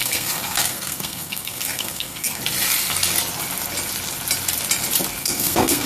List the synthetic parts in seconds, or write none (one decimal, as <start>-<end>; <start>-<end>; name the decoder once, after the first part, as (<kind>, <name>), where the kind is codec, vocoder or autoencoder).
0.0-2.4 (codec, SNAC); 5.2-5.9